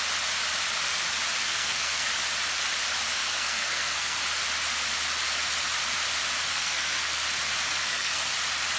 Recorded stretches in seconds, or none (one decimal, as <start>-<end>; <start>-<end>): 0.0-1.4; 2.1-3.2; 4.2-6.5; 7.2-7.7; 8.3-8.8